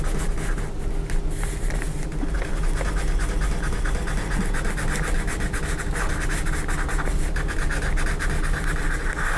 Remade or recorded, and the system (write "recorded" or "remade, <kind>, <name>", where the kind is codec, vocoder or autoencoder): recorded